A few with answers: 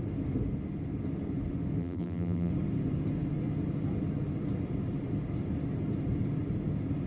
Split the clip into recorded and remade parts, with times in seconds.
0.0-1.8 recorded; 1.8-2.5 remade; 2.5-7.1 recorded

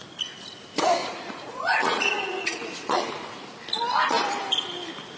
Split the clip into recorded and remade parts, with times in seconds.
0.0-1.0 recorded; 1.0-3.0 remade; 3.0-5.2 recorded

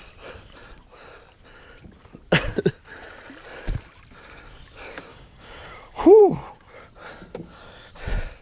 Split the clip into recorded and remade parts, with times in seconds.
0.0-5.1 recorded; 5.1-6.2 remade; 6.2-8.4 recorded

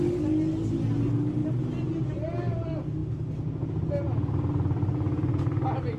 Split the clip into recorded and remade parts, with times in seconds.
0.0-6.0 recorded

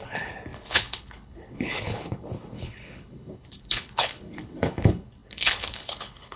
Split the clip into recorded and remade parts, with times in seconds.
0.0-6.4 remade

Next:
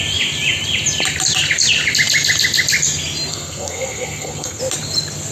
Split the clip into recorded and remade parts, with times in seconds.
0.0-3.3 recorded; 3.3-4.6 remade; 4.6-5.3 recorded

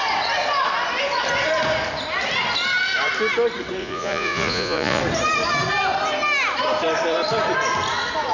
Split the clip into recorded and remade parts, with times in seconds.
0.0-3.8 recorded; 3.8-5.0 remade; 5.0-8.3 recorded

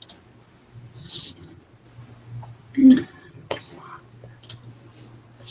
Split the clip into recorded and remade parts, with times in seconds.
0.0-1.0 recorded; 1.0-1.6 remade; 1.6-2.8 recorded; 2.8-4.0 remade; 4.0-5.5 recorded